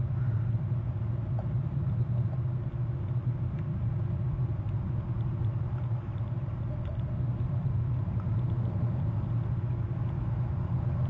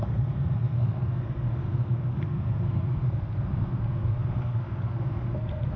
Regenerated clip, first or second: second